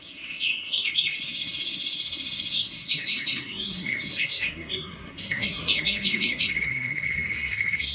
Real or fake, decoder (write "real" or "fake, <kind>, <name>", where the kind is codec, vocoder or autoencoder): fake, codec, SNAC